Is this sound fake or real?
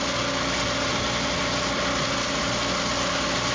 real